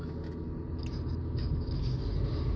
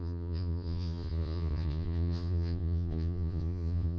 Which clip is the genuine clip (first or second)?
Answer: first